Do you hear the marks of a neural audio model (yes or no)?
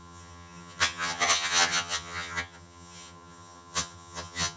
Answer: yes